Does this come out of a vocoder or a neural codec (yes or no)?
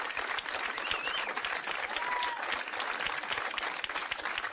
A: yes